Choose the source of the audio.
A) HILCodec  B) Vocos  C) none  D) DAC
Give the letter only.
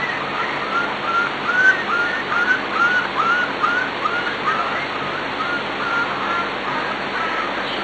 C